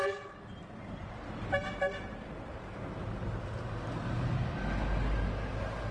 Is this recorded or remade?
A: recorded